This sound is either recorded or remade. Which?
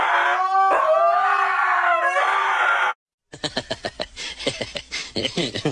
recorded